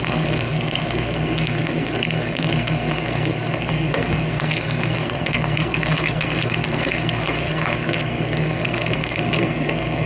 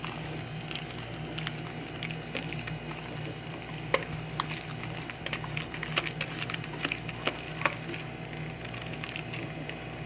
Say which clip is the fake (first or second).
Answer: first